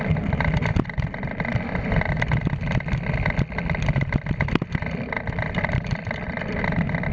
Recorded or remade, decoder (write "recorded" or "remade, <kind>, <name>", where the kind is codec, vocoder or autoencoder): recorded